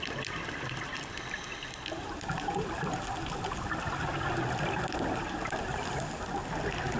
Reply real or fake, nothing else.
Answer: fake